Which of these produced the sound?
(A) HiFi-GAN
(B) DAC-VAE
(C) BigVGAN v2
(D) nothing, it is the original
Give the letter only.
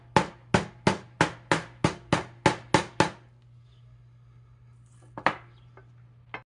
D